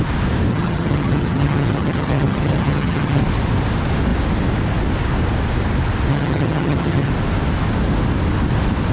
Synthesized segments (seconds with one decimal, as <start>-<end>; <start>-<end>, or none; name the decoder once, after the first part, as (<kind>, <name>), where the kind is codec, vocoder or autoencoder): 0.5-3.2 (vocoder, HiFi-GAN); 6.1-7.1